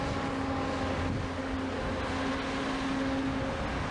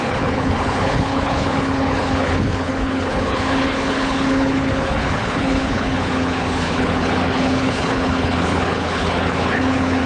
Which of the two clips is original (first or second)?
first